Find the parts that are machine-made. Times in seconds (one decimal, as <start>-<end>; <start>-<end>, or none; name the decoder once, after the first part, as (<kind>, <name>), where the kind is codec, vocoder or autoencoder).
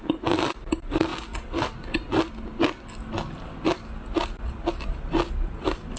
none